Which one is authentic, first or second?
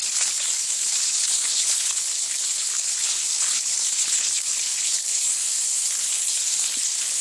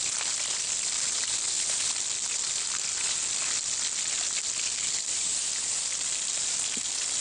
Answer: second